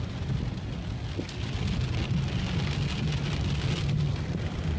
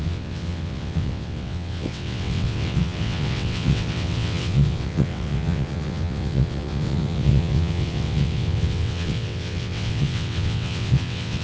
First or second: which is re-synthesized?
second